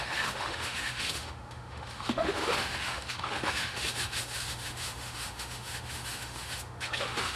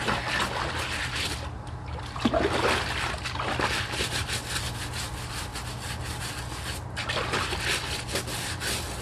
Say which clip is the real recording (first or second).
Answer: second